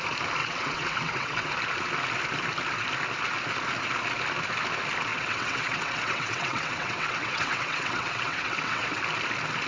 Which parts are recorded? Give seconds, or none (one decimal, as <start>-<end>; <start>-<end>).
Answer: 0.0-0.4; 1.5-5.1; 9.0-9.7